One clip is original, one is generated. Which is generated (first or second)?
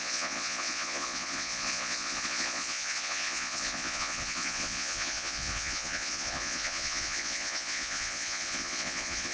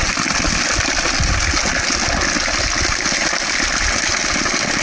first